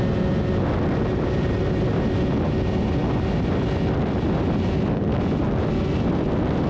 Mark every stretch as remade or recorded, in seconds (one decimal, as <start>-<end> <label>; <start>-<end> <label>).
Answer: 0.0-6.7 recorded